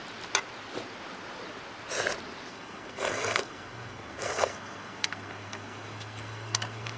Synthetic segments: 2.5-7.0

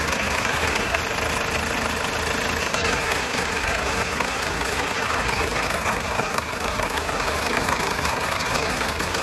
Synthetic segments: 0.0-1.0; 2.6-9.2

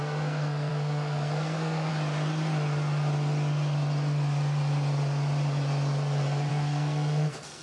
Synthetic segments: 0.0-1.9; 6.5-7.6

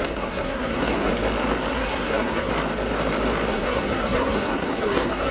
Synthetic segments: 0.0-1.1; 1.7-2.5; 3.5-5.3